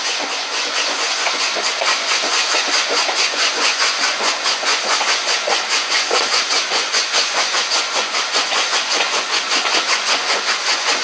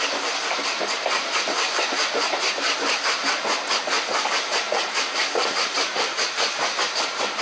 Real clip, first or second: second